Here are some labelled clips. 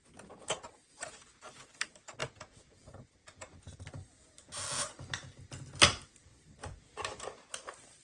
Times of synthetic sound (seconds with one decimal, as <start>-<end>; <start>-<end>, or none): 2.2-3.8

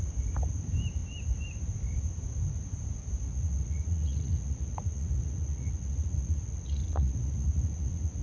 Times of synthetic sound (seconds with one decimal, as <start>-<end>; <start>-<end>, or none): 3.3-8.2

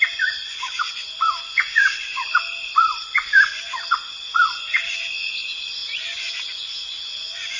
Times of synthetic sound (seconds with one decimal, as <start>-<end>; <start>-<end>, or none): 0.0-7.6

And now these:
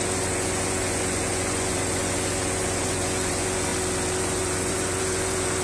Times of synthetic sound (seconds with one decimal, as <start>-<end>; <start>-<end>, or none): 0.0-3.7; 4.2-5.6

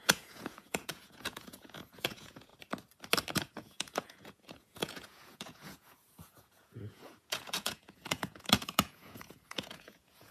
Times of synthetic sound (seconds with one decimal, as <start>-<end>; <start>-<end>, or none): 0.0-2.5; 3.3-10.3